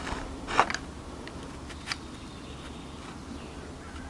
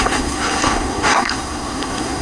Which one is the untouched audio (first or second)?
first